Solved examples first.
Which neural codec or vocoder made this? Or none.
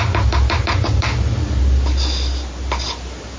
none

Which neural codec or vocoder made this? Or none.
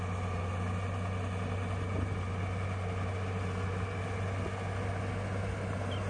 none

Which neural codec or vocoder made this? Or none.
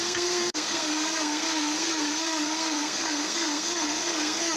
codec, SNAC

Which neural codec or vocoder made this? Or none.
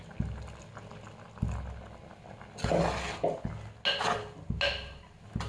none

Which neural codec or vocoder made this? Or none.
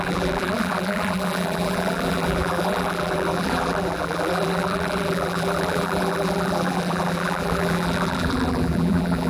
vocoder, BigVGAN v2